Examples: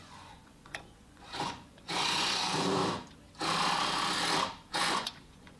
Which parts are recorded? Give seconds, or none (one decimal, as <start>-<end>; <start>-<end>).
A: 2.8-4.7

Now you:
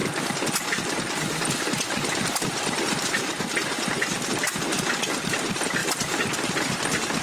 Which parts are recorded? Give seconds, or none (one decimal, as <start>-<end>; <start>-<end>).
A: 0.0-7.2

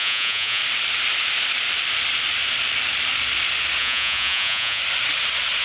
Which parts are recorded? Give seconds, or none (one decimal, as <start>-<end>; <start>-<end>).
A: 0.6-3.8; 4.8-5.6